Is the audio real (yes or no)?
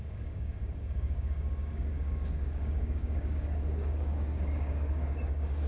no